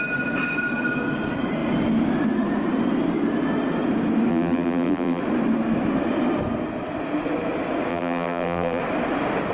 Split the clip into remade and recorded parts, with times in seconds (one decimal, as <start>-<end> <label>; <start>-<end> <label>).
0.0-4.3 recorded; 4.3-5.2 remade; 5.2-7.9 recorded; 7.9-8.8 remade; 8.8-9.5 recorded